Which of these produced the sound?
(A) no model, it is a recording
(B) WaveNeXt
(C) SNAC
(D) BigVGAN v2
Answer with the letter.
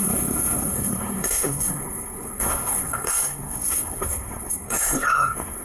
C